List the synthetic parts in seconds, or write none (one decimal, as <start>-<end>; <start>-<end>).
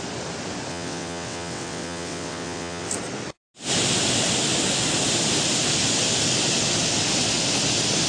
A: 0.7-2.9